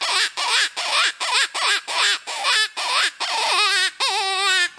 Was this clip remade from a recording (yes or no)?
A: no